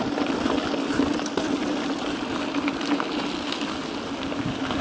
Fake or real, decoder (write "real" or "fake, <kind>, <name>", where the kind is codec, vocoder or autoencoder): real